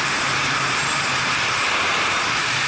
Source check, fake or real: fake